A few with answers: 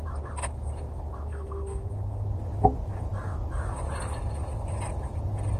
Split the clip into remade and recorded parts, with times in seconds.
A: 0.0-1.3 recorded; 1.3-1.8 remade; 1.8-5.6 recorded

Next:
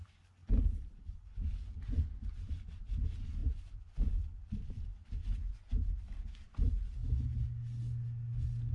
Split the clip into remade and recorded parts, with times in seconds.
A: 0.0-8.7 recorded